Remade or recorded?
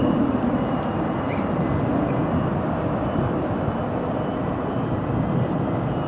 recorded